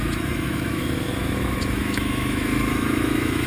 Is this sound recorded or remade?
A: remade